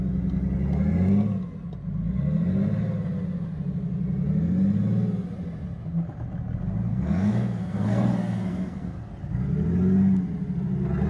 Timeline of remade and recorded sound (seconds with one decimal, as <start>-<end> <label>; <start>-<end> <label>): 0.0-6.9 recorded; 6.9-9.1 remade; 9.1-11.1 recorded